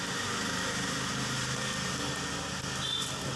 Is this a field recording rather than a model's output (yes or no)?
yes